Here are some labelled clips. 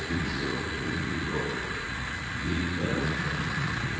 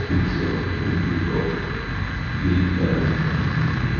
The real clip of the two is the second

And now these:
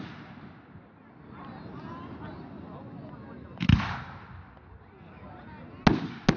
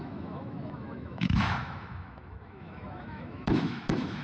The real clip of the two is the first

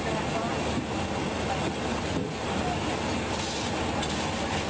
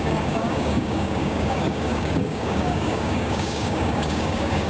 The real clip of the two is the first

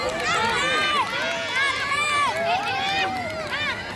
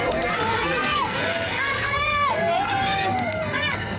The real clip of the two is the first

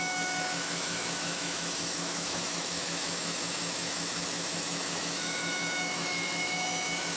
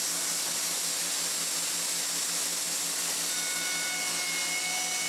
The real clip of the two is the second